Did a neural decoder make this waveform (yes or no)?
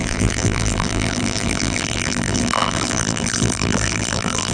yes